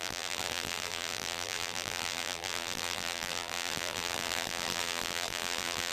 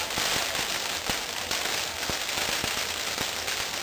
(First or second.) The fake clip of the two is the first